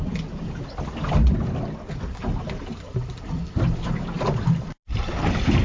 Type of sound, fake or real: real